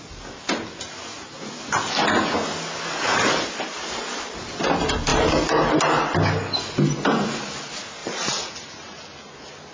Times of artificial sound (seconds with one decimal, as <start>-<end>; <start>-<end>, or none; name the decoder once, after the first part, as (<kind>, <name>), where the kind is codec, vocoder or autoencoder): 5.1-5.8 (vocoder, BigVGAN v2); 8.0-9.0